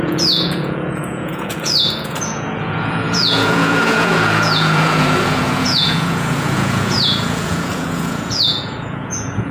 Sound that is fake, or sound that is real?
fake